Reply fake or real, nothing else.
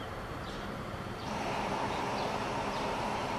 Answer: fake